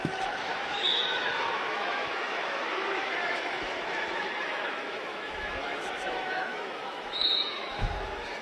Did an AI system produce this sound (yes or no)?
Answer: yes